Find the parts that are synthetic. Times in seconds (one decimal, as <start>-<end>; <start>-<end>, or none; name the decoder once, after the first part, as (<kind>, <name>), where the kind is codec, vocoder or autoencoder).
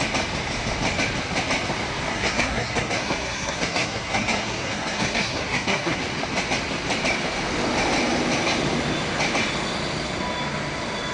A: 2.1-6.0 (codec, SNAC)